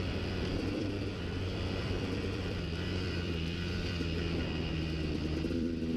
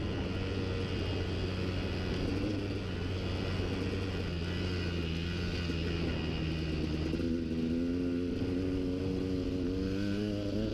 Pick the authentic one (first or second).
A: second